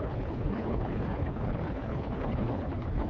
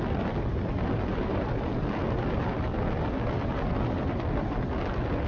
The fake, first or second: first